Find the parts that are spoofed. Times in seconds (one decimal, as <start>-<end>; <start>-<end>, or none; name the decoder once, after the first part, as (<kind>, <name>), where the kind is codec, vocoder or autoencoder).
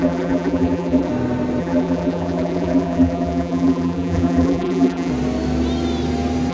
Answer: 0.0-1.1 (vocoder, BigVGAN v2); 1.6-5.1